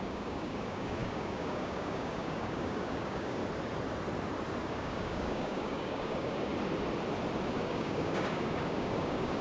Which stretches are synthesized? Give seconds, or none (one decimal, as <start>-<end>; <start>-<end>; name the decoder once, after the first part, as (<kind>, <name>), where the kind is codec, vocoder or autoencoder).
0.0-3.4 (codec, DAC); 4.7-6.5; 7.5-9.4